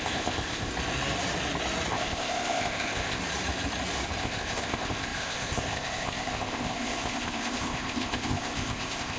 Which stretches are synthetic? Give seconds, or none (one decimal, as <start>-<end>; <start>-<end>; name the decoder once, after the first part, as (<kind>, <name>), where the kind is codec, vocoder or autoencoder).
0.0-0.7 (codec, ZipCodec); 1.9-3.2; 4.2-9.2